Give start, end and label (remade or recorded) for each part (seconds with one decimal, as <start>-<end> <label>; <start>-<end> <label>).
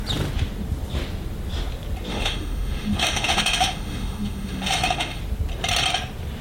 0.0-2.1 recorded; 2.1-5.2 remade; 5.2-6.4 recorded